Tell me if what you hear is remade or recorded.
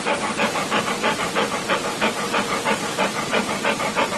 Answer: remade